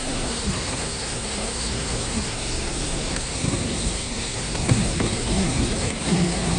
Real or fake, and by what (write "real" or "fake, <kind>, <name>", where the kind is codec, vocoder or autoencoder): fake, codec, SNAC